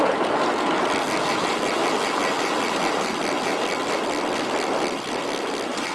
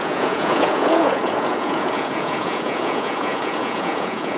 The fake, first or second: second